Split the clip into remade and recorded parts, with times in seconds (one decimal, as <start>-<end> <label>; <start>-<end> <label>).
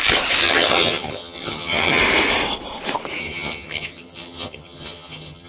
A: 0.0-0.4 recorded; 0.4-2.0 remade; 2.0-3.2 recorded; 3.2-5.5 remade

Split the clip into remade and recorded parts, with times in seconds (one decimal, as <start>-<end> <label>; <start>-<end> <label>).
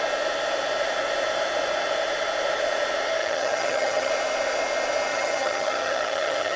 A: 0.0-3.2 recorded; 3.2-4.1 remade; 4.1-5.1 recorded; 5.1-6.6 remade